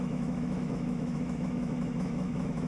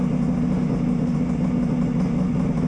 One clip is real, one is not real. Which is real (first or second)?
second